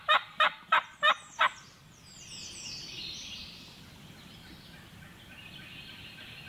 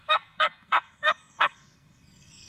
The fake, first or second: second